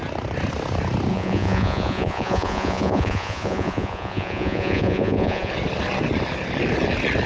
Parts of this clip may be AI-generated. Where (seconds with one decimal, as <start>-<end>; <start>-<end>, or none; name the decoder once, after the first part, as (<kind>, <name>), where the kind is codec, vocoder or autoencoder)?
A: 1.1-5.5 (vocoder, Vocos)

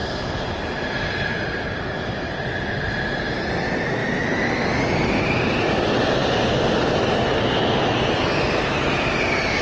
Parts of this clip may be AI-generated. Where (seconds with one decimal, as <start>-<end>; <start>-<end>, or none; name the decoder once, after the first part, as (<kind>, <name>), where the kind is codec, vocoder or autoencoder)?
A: none

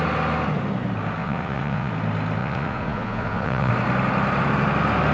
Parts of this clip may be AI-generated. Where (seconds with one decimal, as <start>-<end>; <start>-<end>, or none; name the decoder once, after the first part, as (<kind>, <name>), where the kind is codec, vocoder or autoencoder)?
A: 1.2-1.9 (vocoder, Vocos); 2.4-3.7

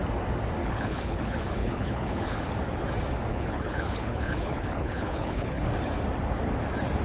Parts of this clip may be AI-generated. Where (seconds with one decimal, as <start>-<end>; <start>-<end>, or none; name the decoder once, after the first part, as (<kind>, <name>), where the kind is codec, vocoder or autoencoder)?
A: 0.6-2.5 (codec, HILCodec); 3.3-5.7

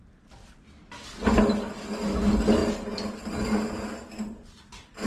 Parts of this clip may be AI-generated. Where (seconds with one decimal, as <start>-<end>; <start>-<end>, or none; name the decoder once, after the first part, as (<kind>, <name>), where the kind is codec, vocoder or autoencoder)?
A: 2.6-3.3 (vocoder, BigVGAN v2)

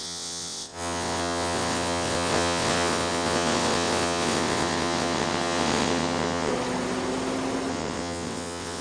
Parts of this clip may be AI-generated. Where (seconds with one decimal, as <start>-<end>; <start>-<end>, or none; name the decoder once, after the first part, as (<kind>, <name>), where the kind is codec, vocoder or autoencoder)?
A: 0.0-6.5 (vocoder, WaveNeXt); 7.7-8.8